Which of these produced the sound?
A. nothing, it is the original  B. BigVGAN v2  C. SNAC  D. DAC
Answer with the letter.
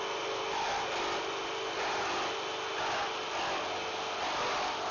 A